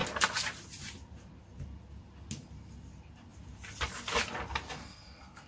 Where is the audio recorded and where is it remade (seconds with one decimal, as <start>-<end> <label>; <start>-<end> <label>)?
0.0-4.8 recorded; 4.8-5.5 remade